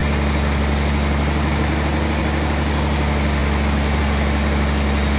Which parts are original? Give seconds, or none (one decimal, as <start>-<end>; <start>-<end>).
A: 0.0-5.2